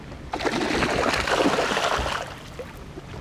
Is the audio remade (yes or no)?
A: no